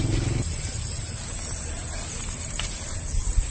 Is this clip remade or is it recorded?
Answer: remade